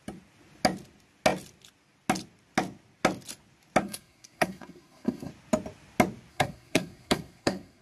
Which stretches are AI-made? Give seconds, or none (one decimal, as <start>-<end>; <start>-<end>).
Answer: 3.8-5.3; 6.3-7.8